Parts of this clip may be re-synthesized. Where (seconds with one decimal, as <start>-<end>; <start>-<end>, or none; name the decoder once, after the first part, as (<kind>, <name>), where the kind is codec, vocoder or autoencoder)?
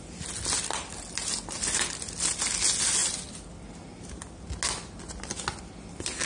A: none